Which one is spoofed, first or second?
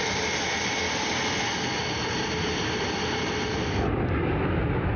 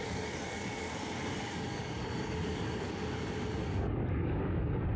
second